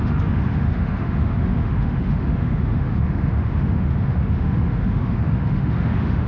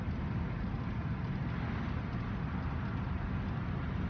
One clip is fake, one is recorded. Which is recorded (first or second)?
second